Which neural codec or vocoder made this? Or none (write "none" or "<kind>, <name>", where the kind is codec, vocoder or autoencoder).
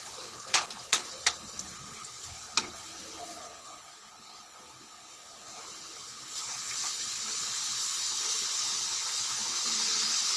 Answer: codec, HILCodec